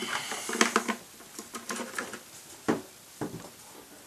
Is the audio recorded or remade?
recorded